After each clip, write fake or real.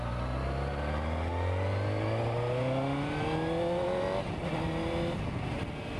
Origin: real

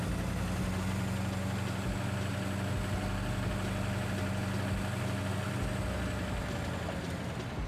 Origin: real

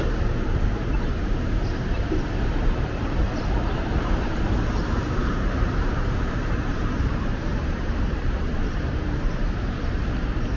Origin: fake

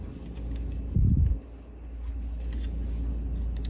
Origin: real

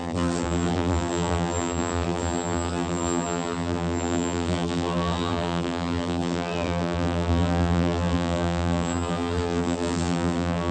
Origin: fake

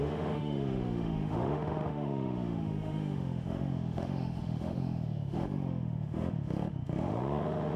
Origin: fake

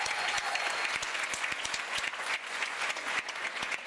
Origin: fake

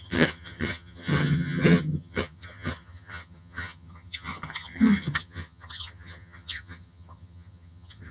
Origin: fake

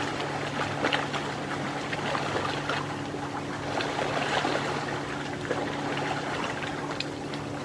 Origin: real